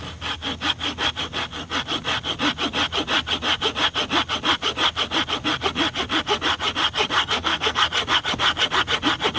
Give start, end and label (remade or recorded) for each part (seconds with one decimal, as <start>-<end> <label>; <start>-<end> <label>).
0.0-7.2 recorded; 7.2-7.8 remade; 7.8-9.4 recorded